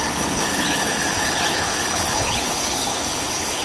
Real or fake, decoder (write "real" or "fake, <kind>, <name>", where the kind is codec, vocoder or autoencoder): fake, codec, HILCodec